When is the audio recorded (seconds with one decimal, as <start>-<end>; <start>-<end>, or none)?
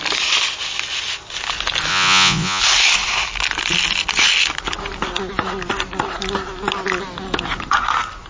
0.0-1.9; 2.6-8.3